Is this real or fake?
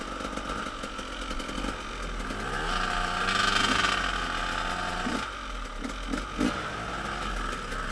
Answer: real